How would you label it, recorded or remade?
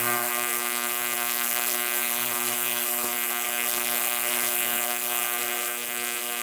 remade